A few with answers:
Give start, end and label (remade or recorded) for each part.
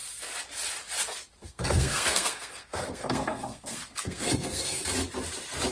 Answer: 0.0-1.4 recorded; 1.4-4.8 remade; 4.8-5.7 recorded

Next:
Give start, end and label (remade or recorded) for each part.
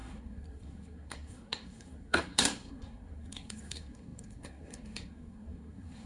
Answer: 0.0-6.1 remade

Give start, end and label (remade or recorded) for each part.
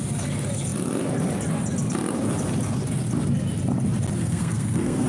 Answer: 0.0-4.2 recorded; 4.2-5.1 remade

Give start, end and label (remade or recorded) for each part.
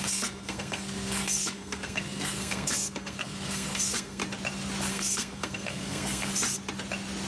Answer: 0.0-4.2 remade; 4.2-4.9 recorded; 4.9-6.3 remade; 6.3-7.3 recorded